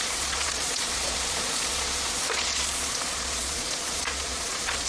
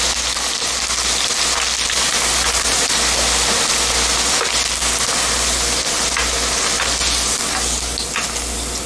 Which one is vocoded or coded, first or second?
first